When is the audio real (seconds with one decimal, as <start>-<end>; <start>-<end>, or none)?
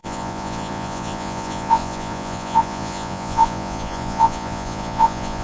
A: none